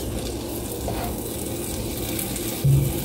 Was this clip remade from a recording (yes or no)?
no